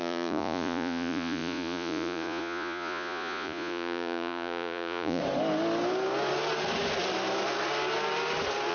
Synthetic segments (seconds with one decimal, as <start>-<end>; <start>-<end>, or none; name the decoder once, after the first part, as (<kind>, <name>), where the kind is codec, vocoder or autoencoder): 0.0-5.2 (vocoder, Vocos)